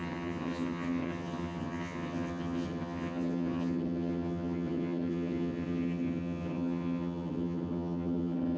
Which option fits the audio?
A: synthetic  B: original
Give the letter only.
A